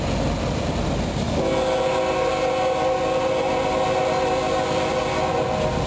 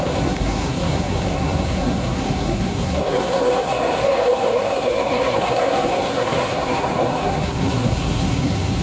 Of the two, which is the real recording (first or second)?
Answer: first